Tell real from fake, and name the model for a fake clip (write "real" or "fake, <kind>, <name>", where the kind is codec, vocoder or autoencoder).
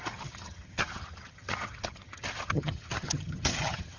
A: fake, vocoder, HiFi-GAN